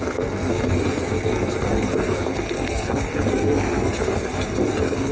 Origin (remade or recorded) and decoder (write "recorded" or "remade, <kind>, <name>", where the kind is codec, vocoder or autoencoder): remade, codec, SNAC